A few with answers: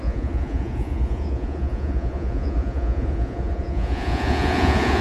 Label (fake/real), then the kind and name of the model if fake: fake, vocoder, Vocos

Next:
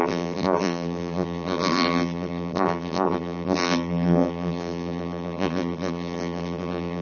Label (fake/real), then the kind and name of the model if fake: fake, vocoder, BigVGAN v2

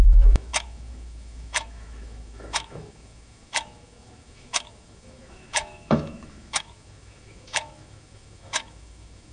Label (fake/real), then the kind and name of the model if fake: fake, autoencoder, DAC-VAE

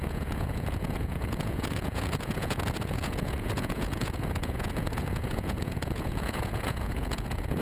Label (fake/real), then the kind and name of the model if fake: fake, vocoder, Vocos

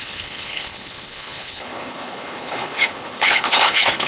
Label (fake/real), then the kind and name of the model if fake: fake, codec, HILCodec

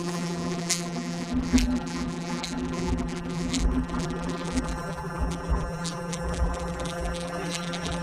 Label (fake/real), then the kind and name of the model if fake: fake, vocoder, BigVGAN v2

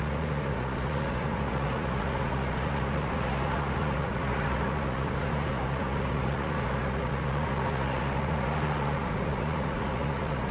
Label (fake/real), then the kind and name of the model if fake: fake, vocoder, Vocos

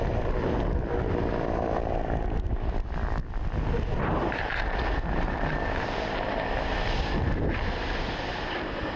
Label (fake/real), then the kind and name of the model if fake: real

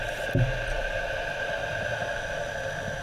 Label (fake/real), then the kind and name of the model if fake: real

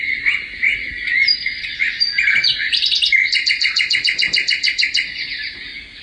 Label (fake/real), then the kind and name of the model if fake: real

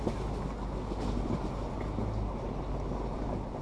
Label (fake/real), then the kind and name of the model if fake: real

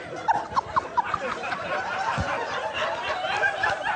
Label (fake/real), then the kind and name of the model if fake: real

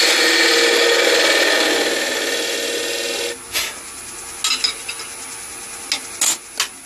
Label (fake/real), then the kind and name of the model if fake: real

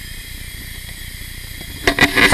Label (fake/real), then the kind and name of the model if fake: real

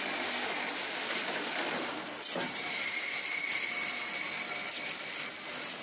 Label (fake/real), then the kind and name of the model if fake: real